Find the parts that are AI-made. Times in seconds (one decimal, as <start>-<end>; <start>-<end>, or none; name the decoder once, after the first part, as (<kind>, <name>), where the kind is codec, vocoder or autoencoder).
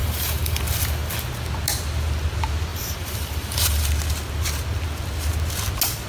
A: 0.0-0.6 (vocoder, BigVGAN v2); 2.7-3.9